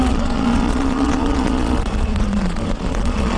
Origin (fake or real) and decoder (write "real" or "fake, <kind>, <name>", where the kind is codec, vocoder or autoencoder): fake, vocoder, Vocos